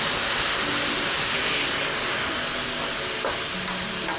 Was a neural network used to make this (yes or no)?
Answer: no